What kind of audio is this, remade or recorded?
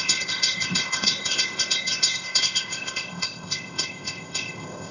remade